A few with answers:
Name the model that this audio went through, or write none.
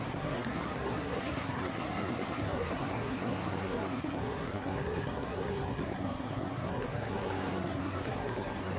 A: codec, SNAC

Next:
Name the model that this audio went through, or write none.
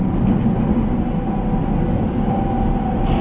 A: none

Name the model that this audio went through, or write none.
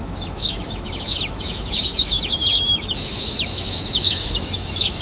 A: autoencoder, DAC-VAE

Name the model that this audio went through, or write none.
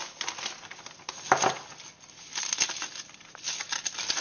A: none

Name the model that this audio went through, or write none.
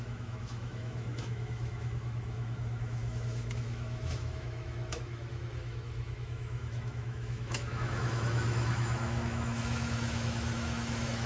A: autoencoder, DAC-VAE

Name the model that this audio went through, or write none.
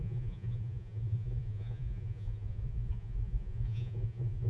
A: vocoder, Vocos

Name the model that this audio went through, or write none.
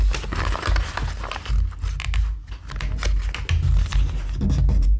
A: none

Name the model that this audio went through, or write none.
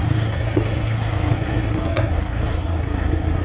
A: codec, SNAC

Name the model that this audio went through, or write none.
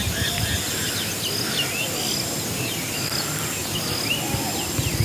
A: none